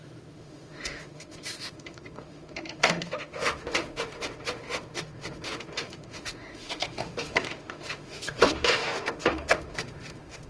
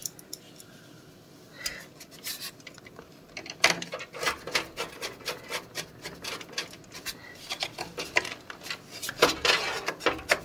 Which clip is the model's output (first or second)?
first